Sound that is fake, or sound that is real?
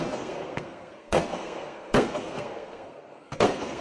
fake